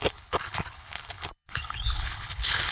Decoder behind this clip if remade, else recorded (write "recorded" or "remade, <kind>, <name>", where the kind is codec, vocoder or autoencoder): remade, codec, HILCodec